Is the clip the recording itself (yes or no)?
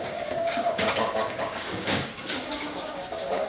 no